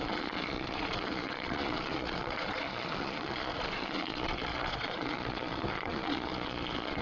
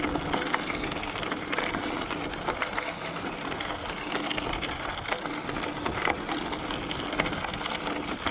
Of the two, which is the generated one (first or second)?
first